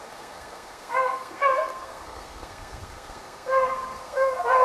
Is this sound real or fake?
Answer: fake